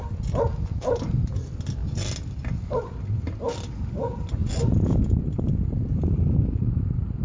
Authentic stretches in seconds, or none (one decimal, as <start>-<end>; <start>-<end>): 0.0-7.2